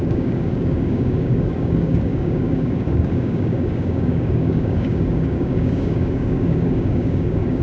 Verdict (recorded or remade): remade